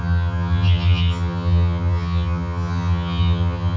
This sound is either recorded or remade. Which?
remade